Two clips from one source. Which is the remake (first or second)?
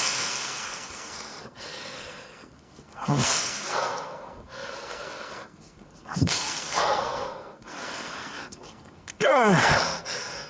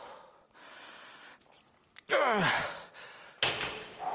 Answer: first